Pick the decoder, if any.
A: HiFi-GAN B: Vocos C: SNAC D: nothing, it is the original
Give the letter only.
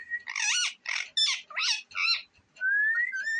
D